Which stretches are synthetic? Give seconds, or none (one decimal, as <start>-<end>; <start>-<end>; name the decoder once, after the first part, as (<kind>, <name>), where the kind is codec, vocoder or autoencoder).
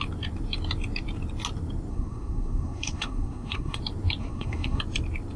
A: 1.9-3.8 (codec, SNAC); 4.2-4.8